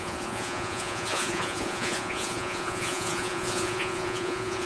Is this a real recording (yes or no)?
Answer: no